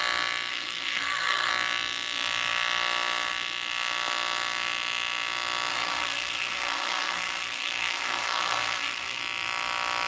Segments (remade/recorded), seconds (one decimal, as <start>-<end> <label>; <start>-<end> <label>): 0.0-0.5 recorded; 0.5-1.5 remade; 1.5-5.7 recorded; 5.7-9.2 remade; 9.2-10.1 recorded